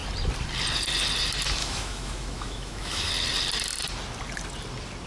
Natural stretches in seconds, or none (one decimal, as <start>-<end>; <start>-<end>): 0.0-1.6; 3.1-5.1